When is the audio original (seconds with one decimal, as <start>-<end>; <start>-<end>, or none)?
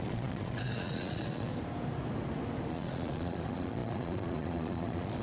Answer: 1.5-2.7